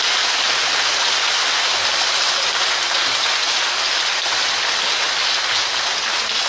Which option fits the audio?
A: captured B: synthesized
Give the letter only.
A